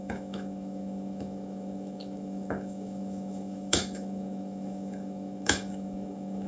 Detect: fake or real fake